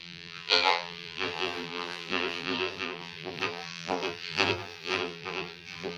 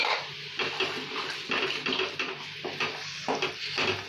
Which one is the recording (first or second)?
second